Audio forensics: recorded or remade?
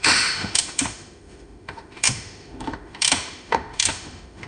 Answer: remade